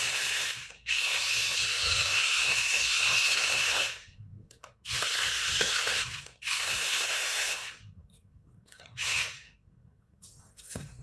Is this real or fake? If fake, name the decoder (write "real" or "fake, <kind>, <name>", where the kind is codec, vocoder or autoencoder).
fake, codec, SNAC